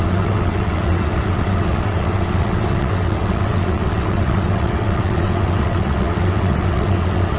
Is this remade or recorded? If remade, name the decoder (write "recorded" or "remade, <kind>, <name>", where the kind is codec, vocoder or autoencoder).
remade, vocoder, WaveNeXt